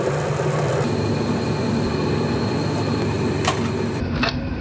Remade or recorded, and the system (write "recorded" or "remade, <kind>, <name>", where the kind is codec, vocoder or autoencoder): recorded